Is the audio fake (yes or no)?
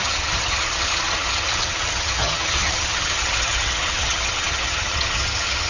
yes